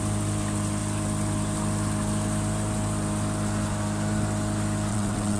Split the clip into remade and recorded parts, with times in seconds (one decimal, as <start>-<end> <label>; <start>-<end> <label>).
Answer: 0.0-4.9 recorded; 4.9-5.4 remade